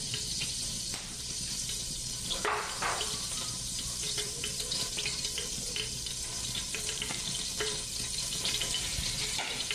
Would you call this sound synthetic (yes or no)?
yes